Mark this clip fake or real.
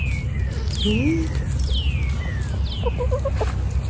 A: real